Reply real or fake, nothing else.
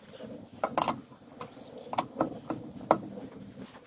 real